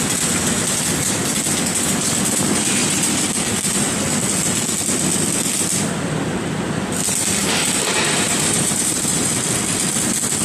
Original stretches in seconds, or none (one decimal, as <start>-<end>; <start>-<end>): 0.0-7.4; 9.3-10.4